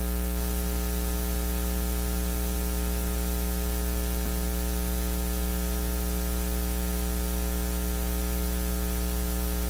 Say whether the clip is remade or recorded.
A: recorded